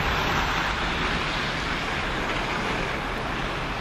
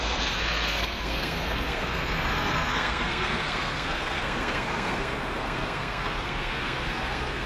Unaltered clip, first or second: first